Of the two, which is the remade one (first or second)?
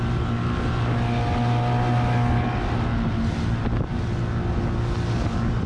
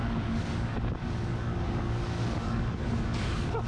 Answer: second